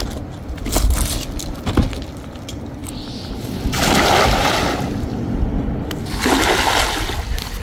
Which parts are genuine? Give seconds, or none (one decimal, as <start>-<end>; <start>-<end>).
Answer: 0.0-7.6